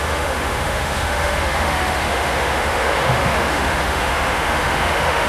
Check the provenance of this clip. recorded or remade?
remade